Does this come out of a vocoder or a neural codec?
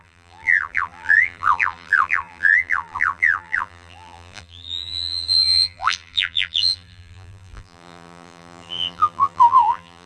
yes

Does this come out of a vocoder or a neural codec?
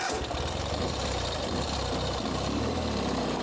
no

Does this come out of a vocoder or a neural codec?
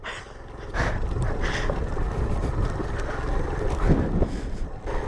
no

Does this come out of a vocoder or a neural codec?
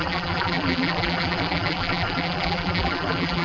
yes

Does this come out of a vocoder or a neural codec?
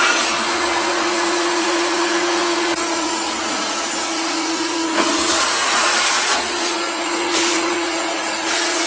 yes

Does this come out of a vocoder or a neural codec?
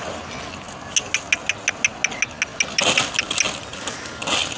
no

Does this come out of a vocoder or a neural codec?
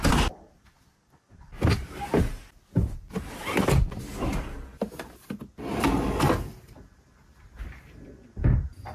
no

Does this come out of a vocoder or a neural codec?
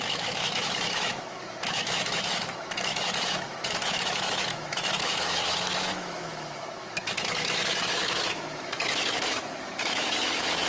yes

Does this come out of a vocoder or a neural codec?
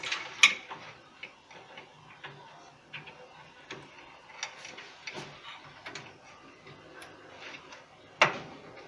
no